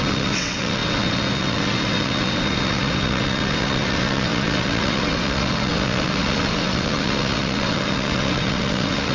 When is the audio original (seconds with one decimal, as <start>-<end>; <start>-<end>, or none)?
none